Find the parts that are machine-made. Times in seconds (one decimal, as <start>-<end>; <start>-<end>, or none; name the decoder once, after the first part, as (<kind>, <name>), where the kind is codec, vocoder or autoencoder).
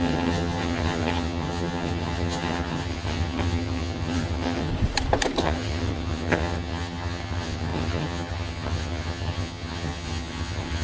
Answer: 0.0-4.7 (vocoder, HiFi-GAN); 5.4-10.8